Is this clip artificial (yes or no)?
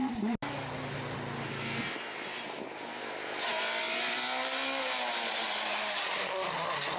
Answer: no